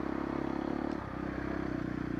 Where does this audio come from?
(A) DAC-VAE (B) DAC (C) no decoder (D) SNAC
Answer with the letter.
C